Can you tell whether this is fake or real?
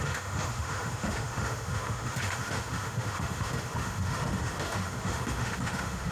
fake